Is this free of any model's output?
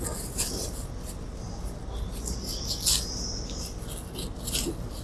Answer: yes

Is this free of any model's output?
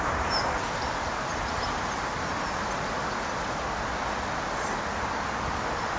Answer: yes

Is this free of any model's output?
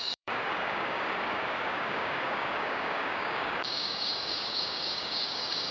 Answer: no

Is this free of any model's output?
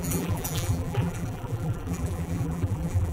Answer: no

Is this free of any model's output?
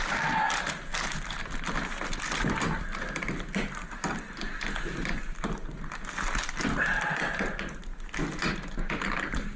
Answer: yes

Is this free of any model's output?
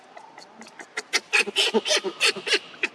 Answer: yes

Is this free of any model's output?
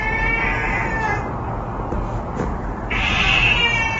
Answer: yes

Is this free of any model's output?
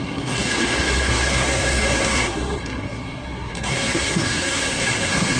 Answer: no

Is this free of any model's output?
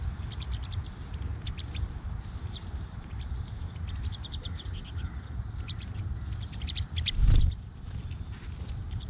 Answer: yes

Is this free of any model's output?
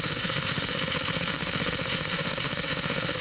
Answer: no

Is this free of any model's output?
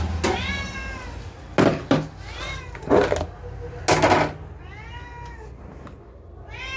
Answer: yes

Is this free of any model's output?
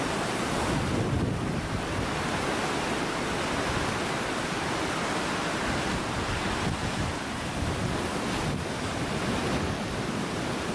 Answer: yes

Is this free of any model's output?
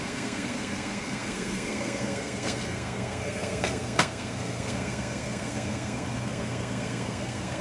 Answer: no